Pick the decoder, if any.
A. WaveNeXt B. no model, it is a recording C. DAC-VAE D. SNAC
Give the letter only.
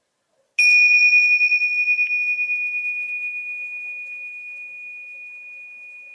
B